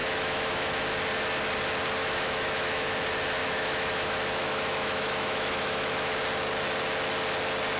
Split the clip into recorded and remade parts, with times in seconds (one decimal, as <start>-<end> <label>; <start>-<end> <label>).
0.0-0.8 remade; 0.8-2.0 recorded; 2.0-2.9 remade; 2.9-3.4 recorded; 3.4-6.1 remade; 6.1-7.8 recorded